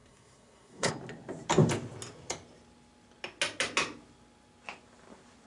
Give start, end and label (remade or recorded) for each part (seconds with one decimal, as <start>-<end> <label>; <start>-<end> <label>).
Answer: 0.0-0.9 remade; 0.9-5.5 recorded